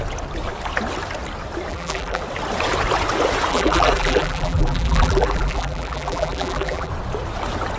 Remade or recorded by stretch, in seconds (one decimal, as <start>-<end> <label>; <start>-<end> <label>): 0.0-1.7 recorded; 1.7-2.2 remade; 2.2-3.5 recorded; 3.5-6.9 remade; 6.9-7.8 recorded

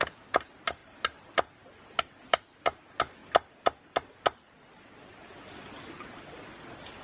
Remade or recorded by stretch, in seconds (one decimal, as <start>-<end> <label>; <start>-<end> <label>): 0.0-7.0 recorded

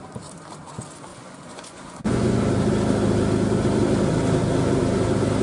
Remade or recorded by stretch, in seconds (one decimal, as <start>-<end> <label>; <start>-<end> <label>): 0.0-1.1 recorded; 1.1-2.4 remade; 2.4-5.4 recorded

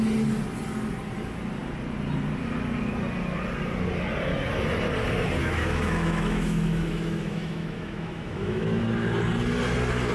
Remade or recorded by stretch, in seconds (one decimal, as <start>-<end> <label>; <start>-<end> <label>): 0.0-5.4 recorded; 5.4-8.8 remade; 8.8-10.1 recorded

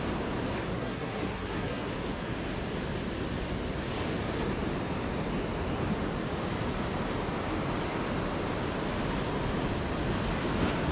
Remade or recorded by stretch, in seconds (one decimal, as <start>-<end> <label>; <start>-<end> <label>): 0.0-0.7 recorded; 0.7-1.9 remade; 1.9-10.9 recorded

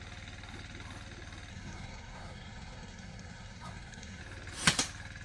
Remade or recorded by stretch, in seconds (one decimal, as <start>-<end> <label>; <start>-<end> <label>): 0.0-1.5 recorded; 1.5-4.2 remade; 4.2-5.2 recorded